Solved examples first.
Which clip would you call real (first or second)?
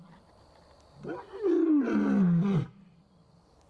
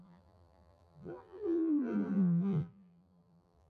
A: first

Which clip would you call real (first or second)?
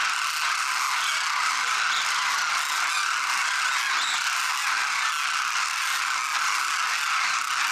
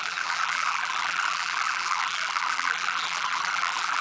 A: first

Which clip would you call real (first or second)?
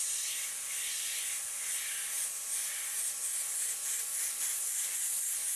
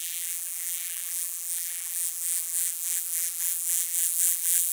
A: first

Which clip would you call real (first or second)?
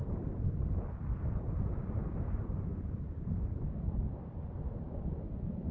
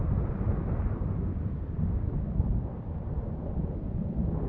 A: second